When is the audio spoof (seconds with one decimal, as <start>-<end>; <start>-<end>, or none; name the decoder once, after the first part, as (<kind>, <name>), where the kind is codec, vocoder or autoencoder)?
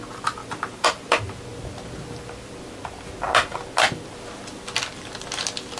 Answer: 0.4-1.0 (vocoder, BigVGAN v2)